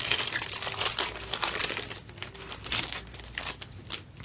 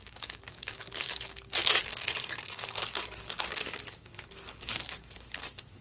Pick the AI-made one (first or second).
second